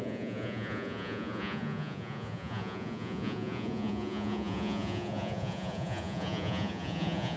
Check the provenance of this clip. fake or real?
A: fake